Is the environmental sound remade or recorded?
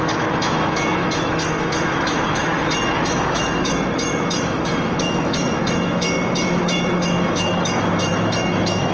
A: remade